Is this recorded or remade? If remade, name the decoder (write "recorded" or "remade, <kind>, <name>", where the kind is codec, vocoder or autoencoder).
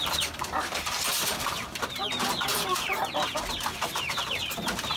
remade, vocoder, BigVGAN v2